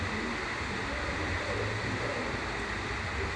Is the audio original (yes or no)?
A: yes